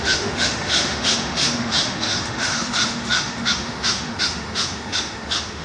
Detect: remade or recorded remade